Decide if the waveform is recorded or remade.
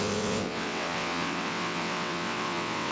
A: remade